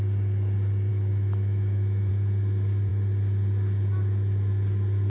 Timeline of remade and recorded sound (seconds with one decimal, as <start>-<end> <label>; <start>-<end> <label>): 0.0-0.9 recorded; 0.9-2.1 remade; 2.1-5.1 recorded

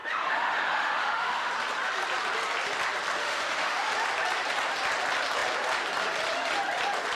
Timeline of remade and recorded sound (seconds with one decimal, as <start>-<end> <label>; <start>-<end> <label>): 0.0-1.5 remade; 1.5-3.2 recorded; 3.2-3.9 remade; 3.9-7.1 recorded

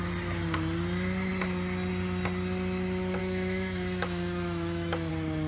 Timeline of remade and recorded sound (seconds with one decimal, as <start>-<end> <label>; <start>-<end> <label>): 0.0-3.2 recorded; 3.2-5.1 remade; 5.1-5.5 recorded

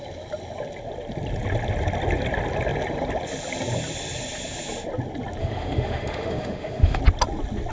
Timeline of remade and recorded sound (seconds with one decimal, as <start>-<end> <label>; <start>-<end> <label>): 0.0-5.4 recorded; 5.4-7.0 remade; 7.0-7.7 recorded

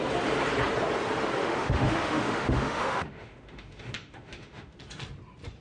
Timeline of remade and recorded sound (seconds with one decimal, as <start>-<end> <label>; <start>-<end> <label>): 0.0-1.4 recorded; 1.4-4.8 remade; 4.8-5.6 recorded

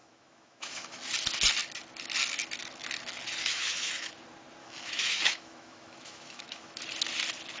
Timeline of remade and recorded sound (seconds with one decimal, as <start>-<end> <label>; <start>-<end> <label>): 0.0-1.0 remade; 1.0-3.4 recorded; 3.4-4.1 remade; 4.1-4.6 recorded; 4.6-6.8 remade; 6.8-7.6 recorded

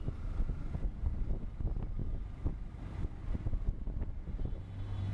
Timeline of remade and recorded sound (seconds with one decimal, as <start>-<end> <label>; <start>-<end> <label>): 0.0-5.1 recorded

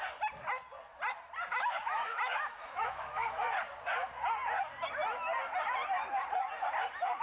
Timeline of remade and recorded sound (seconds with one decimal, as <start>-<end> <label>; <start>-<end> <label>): 0.0-1.5 recorded; 1.5-3.6 remade; 3.6-7.2 recorded